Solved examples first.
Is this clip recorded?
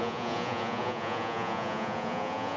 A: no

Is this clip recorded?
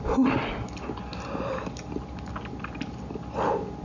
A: yes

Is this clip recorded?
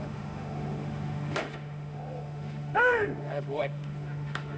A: no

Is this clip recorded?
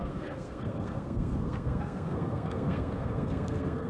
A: no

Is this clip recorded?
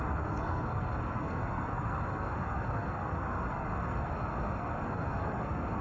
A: no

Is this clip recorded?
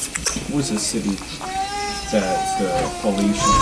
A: no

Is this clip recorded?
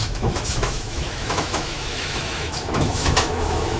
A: no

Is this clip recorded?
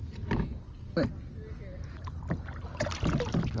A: yes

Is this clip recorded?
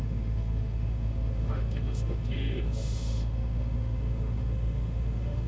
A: no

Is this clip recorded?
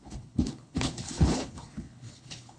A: no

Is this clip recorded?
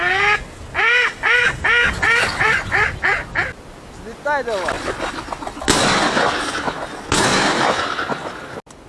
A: yes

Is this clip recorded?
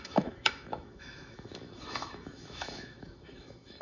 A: no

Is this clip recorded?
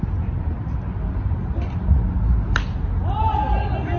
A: yes